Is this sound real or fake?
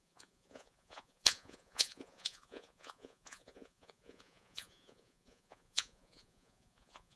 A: fake